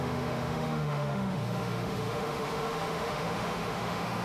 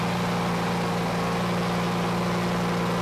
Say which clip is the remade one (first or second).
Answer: first